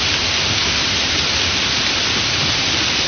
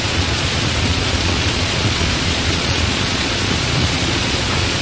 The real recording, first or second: first